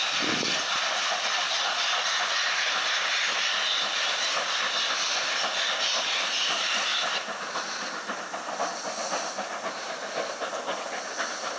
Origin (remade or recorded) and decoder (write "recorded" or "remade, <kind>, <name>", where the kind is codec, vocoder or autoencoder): recorded